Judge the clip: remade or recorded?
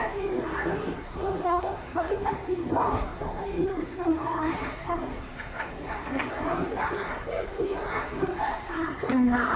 remade